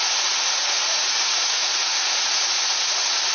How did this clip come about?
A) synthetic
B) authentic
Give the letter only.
A